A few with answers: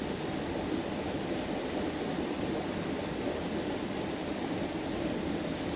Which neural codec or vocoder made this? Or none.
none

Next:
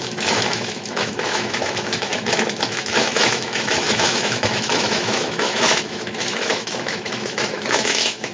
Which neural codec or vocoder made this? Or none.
autoencoder, DAC-VAE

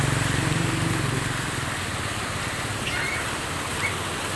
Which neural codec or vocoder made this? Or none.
none